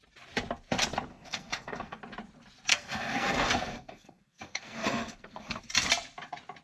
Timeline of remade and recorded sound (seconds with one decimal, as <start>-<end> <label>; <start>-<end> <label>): 0.0-1.1 recorded; 1.1-2.0 remade; 2.0-2.7 recorded; 2.7-5.6 remade; 5.6-6.6 recorded